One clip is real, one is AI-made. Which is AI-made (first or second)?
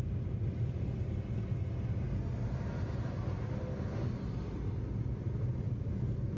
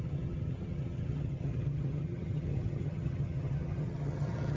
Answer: second